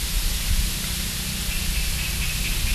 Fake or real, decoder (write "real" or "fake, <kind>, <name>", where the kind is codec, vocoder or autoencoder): real